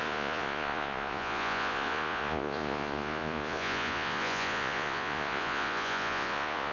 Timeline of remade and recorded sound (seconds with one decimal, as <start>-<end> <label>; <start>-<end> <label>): 0.0-6.7 remade